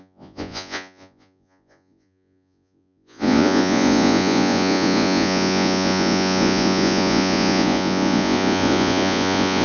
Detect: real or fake fake